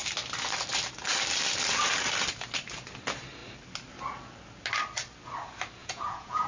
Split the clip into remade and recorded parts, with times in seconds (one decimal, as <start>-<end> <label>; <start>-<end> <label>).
0.0-5.8 recorded; 5.8-6.5 remade